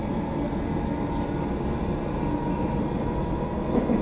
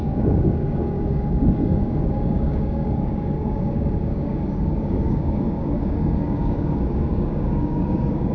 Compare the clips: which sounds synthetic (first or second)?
second